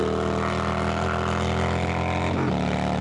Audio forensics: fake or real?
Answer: real